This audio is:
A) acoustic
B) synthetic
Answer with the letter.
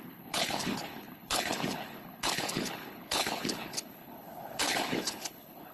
B